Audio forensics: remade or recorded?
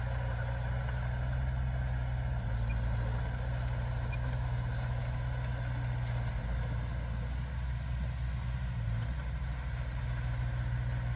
recorded